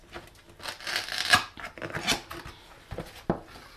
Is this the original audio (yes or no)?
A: yes